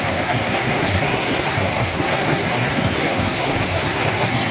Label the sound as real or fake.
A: fake